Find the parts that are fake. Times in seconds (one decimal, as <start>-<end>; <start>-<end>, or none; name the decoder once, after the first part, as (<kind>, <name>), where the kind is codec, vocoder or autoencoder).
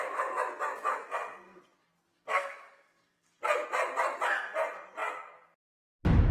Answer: 0.9-1.6 (codec, SNAC); 2.1-3.4